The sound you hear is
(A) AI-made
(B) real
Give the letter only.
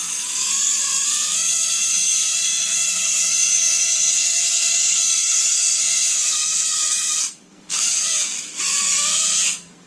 A